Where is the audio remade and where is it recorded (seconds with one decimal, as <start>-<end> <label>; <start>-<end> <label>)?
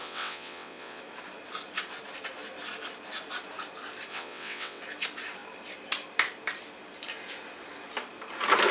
0.0-1.0 remade; 1.0-4.1 recorded; 4.1-4.8 remade; 4.8-8.7 recorded